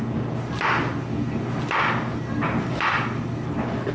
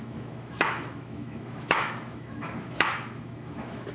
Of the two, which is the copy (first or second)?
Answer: second